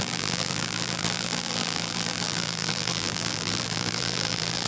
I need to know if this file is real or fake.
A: fake